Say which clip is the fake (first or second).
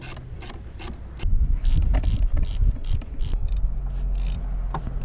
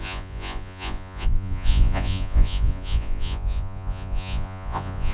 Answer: second